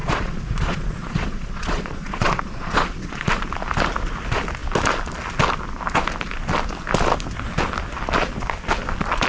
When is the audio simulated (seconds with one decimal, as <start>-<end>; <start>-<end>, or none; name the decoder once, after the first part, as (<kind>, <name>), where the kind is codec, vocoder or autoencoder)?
0.0-3.3 (vocoder, Vocos)